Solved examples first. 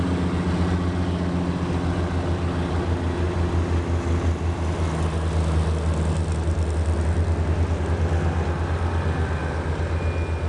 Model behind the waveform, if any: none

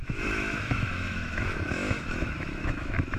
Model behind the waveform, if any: autoencoder, DAC-VAE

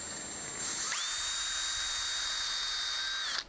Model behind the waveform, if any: none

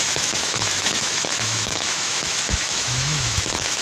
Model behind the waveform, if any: autoencoder, DAC-VAE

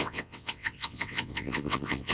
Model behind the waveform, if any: vocoder, WaveNeXt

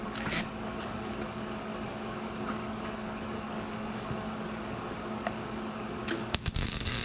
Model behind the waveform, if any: codec, DAC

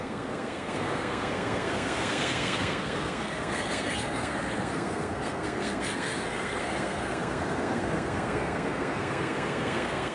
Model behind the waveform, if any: codec, SNAC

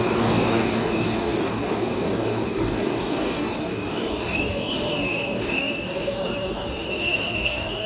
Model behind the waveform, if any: codec, DAC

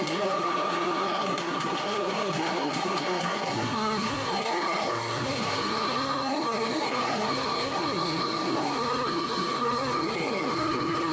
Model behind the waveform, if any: codec, SNAC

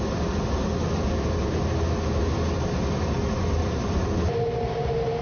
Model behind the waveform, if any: none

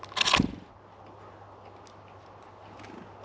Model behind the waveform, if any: none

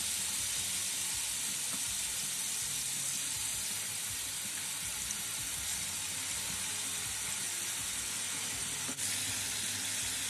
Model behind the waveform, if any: none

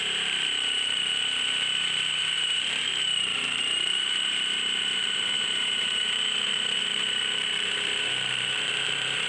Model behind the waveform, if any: vocoder, BigVGAN v2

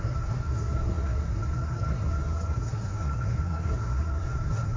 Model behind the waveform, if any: codec, SNAC